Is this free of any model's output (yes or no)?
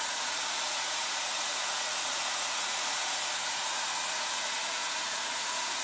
no